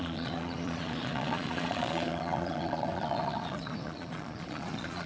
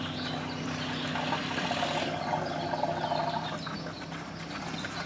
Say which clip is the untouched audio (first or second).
second